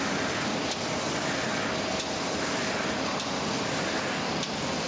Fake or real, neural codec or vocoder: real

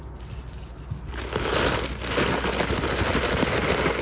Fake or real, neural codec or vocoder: real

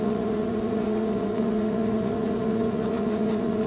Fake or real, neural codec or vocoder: fake, vocoder, Vocos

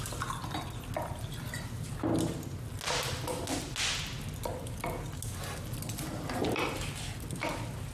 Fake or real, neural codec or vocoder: real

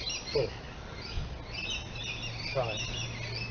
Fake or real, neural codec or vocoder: real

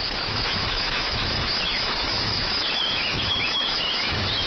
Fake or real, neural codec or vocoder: fake, autoencoder, DAC-VAE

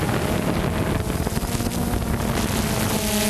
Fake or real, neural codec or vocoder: real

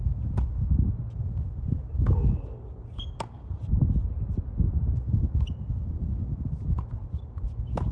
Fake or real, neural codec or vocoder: real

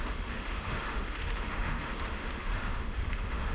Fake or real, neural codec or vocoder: fake, autoencoder, DAC-VAE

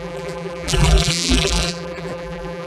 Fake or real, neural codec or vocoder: fake, vocoder, BigVGAN v2